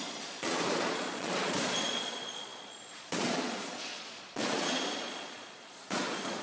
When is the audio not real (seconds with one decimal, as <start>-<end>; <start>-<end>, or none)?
0.0-6.4